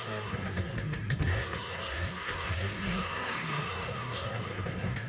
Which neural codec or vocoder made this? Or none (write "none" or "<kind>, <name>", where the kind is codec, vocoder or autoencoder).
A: codec, SNAC